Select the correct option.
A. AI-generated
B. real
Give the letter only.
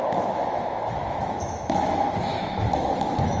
A